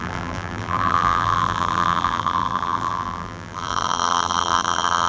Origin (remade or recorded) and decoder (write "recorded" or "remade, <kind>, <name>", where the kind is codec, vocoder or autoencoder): remade, vocoder, BigVGAN v2